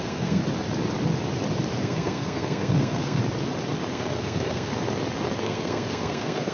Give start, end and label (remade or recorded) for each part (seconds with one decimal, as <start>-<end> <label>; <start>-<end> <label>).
0.0-0.4 remade; 0.4-1.8 recorded; 1.8-3.2 remade; 3.2-3.9 recorded; 3.9-4.7 remade; 4.7-5.4 recorded; 5.4-6.5 remade

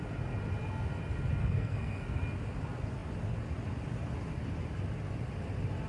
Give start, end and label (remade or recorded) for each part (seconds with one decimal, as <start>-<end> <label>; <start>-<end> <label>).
0.0-1.4 recorded; 1.4-2.2 remade; 2.2-5.9 recorded

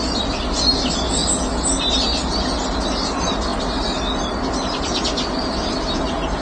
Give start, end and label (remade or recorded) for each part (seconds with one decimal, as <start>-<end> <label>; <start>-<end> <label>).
0.0-6.4 recorded

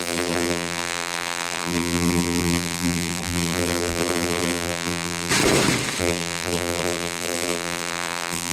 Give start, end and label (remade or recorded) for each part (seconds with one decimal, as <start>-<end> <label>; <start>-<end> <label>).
0.0-5.3 remade; 5.3-6.0 recorded; 6.0-8.5 remade

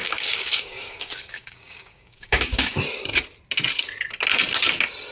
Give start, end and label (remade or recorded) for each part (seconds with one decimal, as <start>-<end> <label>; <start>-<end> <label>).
0.0-2.8 remade; 2.8-5.1 recorded